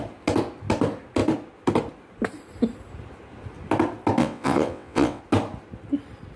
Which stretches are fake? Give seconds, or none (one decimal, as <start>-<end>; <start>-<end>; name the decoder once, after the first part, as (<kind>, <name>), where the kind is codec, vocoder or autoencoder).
4.2-5.2 (vocoder, WaveNeXt)